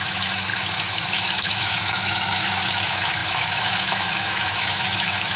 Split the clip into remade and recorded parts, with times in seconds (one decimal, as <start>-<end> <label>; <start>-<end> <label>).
0.0-5.4 remade